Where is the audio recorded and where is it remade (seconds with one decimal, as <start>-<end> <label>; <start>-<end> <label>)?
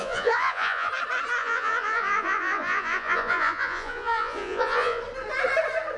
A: 0.0-0.9 remade; 0.9-1.4 recorded; 1.4-5.0 remade; 5.0-6.0 recorded